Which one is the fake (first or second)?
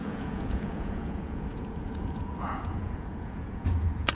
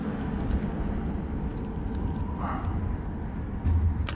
first